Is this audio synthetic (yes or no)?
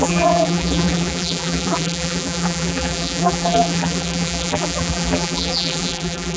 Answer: yes